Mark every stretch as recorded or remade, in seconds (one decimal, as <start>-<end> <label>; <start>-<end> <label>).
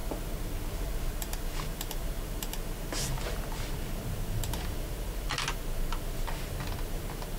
0.0-7.4 recorded